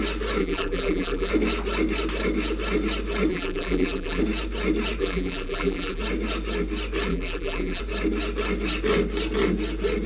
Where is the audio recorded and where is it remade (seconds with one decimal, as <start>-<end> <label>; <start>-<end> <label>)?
0.0-0.4 recorded; 0.4-1.3 remade; 1.3-3.3 recorded; 3.3-4.2 remade; 4.2-5.0 recorded; 5.0-6.0 remade; 6.0-7.1 recorded; 7.1-7.8 remade; 7.8-10.1 recorded